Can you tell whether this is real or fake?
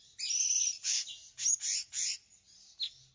real